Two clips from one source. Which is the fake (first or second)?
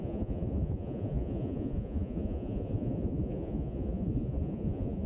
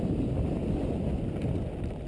first